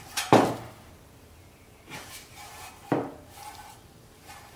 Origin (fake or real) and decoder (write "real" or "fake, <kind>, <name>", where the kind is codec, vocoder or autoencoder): fake, vocoder, BigVGAN v2